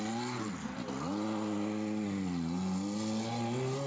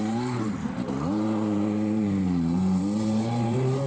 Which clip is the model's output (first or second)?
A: second